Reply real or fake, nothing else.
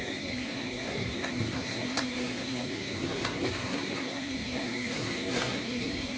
fake